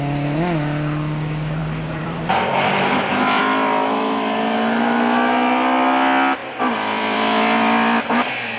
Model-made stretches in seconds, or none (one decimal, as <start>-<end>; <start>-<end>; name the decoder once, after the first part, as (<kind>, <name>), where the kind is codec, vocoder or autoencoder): 1.6-3.4 (vocoder, BigVGAN v2); 6.4-8.6